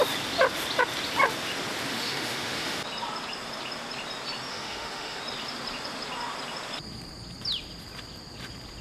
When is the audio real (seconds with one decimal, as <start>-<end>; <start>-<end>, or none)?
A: 0.0-1.9; 2.8-4.5; 5.2-8.8